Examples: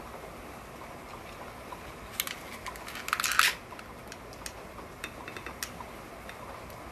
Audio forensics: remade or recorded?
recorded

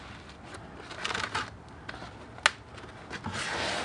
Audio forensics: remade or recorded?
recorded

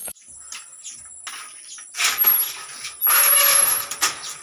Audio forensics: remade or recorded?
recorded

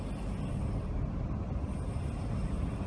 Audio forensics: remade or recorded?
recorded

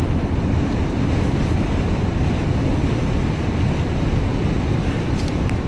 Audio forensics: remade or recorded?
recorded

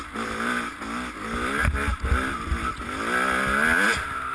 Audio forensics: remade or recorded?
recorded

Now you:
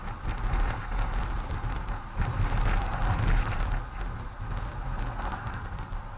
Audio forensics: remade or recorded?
recorded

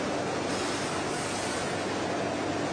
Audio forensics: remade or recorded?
recorded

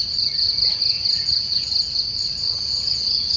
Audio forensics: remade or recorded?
recorded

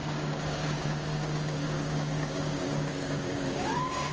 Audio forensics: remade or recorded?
remade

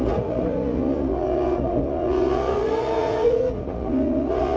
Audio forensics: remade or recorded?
remade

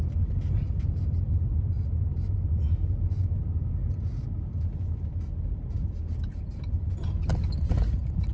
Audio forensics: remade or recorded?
recorded